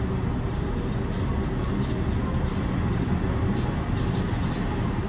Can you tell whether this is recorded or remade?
recorded